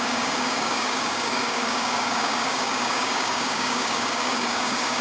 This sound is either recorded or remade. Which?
remade